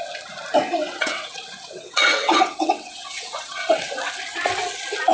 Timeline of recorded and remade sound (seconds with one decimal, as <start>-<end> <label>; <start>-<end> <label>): 0.0-0.8 recorded; 0.8-3.9 remade; 3.9-5.1 recorded